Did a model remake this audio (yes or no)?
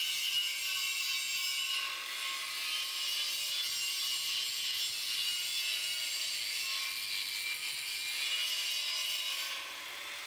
no